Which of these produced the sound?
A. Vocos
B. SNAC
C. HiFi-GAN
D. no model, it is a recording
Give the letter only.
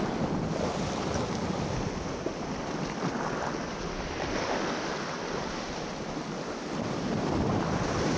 D